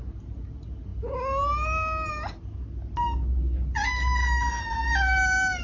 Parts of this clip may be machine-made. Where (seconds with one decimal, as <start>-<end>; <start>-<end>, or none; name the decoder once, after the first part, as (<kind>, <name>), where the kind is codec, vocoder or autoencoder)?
none